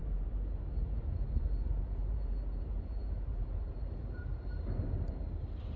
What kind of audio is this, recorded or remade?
remade